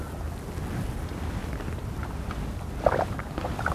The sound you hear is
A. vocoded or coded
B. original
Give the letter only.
B